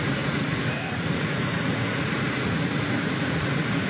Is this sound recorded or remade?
remade